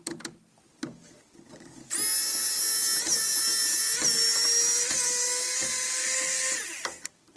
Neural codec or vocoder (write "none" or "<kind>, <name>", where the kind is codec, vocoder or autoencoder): none